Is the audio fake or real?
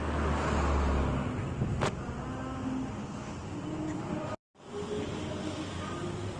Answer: real